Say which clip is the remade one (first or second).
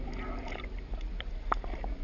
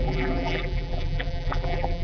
second